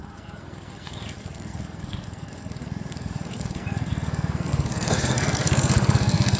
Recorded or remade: remade